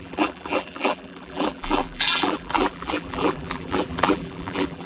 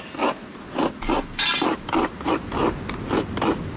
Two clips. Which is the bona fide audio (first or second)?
second